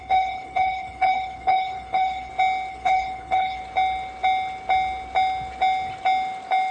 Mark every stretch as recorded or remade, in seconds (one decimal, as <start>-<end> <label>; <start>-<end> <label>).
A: 0.0-2.3 remade; 2.3-2.7 recorded; 2.7-3.6 remade; 3.6-6.7 recorded